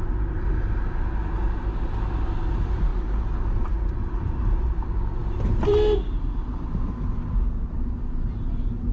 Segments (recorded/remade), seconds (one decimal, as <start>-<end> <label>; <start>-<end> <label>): 0.0-8.9 recorded